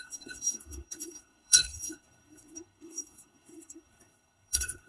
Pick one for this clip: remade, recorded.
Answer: remade